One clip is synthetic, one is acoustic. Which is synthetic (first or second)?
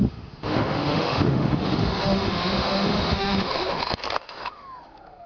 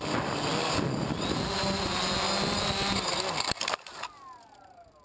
first